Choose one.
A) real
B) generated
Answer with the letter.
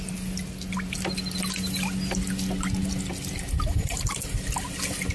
A